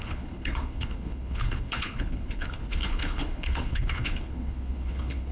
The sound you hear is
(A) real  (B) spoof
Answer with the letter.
B